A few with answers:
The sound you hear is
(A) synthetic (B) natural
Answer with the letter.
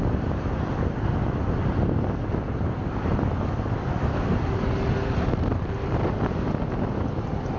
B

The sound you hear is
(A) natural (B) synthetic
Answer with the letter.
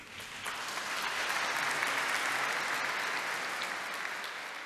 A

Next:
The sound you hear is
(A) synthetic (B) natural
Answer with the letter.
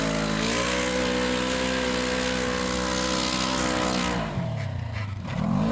B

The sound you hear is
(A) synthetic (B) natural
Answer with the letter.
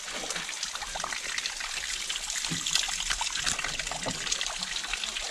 B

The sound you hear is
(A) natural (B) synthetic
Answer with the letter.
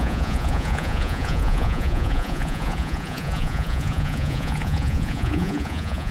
B